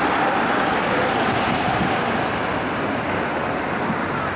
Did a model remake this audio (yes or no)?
no